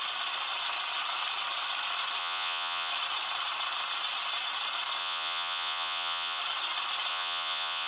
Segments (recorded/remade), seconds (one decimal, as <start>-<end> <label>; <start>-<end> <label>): 0.0-2.2 recorded; 2.2-2.9 remade; 2.9-5.0 recorded; 5.0-6.4 remade; 6.4-7.1 recorded; 7.1-7.9 remade